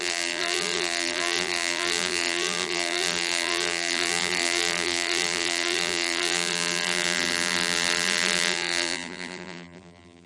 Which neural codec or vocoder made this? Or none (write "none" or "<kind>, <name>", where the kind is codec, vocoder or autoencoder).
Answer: vocoder, BigVGAN v2